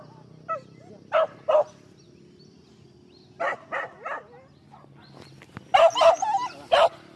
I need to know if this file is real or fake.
real